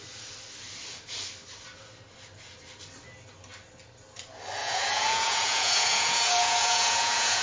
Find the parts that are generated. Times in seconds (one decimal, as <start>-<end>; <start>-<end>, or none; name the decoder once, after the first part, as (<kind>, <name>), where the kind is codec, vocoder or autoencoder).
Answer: 4.6-7.4 (vocoder, Vocos)